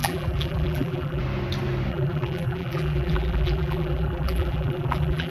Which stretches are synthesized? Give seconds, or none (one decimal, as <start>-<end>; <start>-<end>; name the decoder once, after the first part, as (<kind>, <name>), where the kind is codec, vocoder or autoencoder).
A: 0.0-1.2 (vocoder, BigVGAN v2); 1.9-5.3